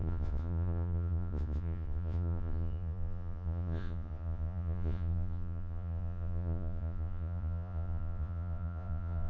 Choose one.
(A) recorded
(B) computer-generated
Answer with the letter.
B